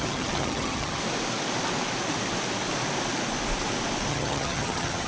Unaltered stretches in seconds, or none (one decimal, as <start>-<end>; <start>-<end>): 1.0-4.1